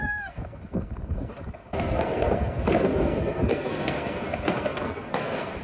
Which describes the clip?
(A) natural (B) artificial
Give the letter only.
B